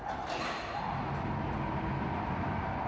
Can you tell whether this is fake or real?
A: real